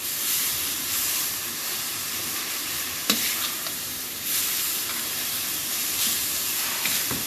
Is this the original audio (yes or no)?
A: no